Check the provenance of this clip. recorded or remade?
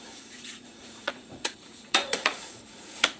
remade